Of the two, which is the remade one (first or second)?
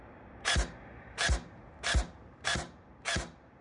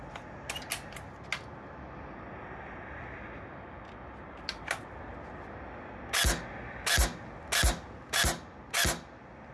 first